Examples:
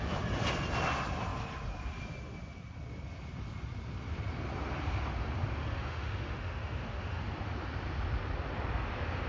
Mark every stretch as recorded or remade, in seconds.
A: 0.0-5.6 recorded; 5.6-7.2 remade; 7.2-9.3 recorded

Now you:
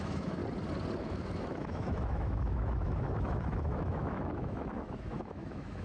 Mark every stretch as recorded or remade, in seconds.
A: 0.0-0.4 remade; 0.4-1.0 recorded; 1.0-5.8 remade

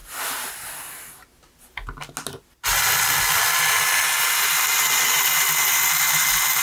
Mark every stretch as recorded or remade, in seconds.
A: 0.0-6.6 recorded

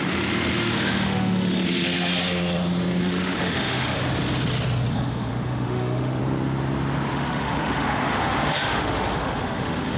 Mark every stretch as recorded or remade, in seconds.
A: 0.0-2.1 remade; 2.1-3.0 recorded; 3.0-4.0 remade; 4.0-4.9 recorded; 4.9-6.2 remade; 6.2-7.1 recorded; 7.1-10.0 remade

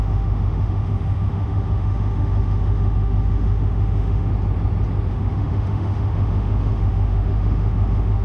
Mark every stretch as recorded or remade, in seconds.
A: 0.0-4.3 remade; 4.3-5.1 recorded; 5.1-8.2 remade

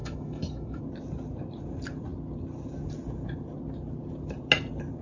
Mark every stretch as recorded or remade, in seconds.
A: 0.0-0.8 remade; 0.8-5.0 recorded

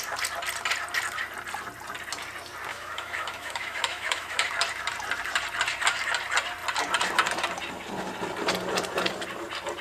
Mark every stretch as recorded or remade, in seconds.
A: 0.0-2.7 recorded; 2.7-4.5 remade; 4.5-9.8 recorded